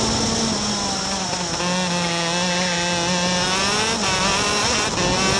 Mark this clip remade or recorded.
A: recorded